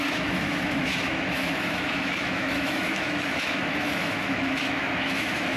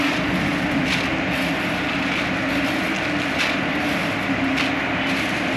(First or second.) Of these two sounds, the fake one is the first